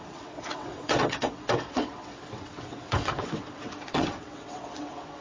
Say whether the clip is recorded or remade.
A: remade